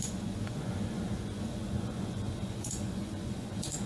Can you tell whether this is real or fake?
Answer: fake